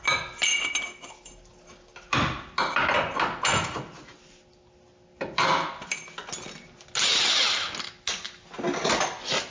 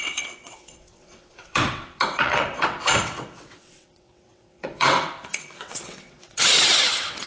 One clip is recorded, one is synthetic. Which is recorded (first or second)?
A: first